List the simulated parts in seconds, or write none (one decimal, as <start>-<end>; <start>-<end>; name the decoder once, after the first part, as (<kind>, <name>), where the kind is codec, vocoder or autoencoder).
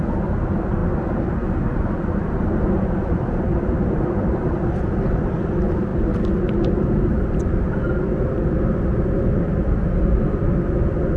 0.0-0.8 (vocoder, BigVGAN v2); 2.0-5.9; 10.3-11.2